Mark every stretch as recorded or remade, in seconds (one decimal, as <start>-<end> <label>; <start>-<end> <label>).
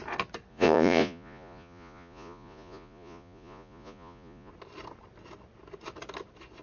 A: 0.0-0.5 recorded; 0.5-4.5 remade; 4.5-6.6 recorded